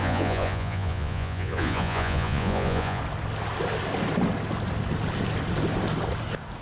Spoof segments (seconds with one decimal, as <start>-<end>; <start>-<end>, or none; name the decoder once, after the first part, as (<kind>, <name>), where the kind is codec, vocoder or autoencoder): 0.0-3.0 (vocoder, Vocos)